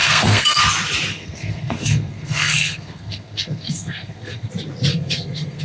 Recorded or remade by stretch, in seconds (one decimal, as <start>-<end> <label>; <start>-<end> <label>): 0.0-0.6 remade; 0.6-1.1 recorded; 1.1-4.5 remade; 4.5-4.9 recorded; 4.9-5.6 remade